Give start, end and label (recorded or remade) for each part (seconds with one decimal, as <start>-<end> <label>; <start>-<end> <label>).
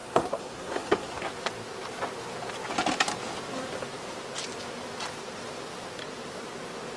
0.0-1.3 remade; 1.3-7.0 recorded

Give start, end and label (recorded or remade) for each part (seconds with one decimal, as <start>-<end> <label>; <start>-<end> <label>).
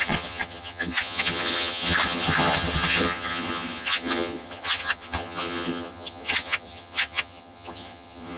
0.0-8.4 remade